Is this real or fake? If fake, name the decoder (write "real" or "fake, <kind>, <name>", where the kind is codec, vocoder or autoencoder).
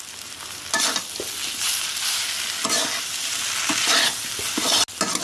real